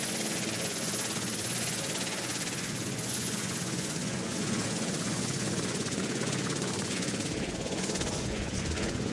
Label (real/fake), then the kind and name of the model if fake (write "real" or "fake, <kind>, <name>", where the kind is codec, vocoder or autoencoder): fake, vocoder, Vocos